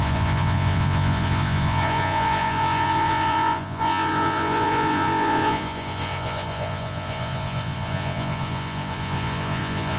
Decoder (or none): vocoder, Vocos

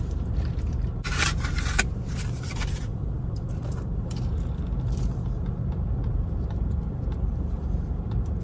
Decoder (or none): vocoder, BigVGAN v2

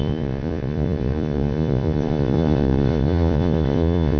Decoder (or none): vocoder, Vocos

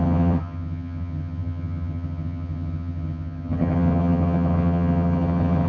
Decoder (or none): vocoder, HiFi-GAN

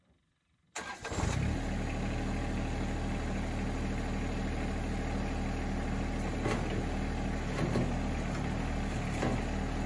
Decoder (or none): none